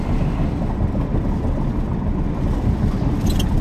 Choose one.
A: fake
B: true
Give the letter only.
B